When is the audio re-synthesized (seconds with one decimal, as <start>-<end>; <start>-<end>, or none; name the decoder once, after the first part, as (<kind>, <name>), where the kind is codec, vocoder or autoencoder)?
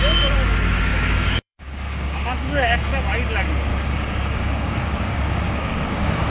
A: 0.9-3.0 (codec, DAC); 3.7-6.3